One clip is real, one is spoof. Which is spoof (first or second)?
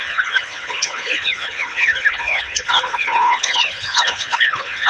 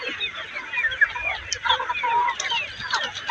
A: first